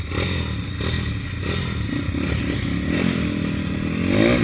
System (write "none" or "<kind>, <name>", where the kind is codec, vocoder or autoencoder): none